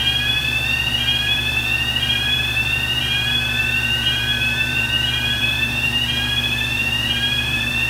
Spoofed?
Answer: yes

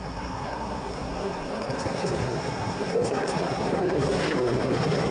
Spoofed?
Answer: yes